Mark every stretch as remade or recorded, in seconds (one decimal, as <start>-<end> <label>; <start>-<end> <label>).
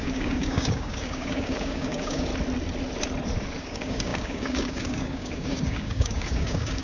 0.0-2.3 remade; 2.3-3.6 recorded; 3.6-6.8 remade